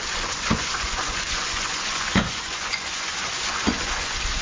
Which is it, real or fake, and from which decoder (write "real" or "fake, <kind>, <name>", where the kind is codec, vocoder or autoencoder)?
fake, vocoder, Vocos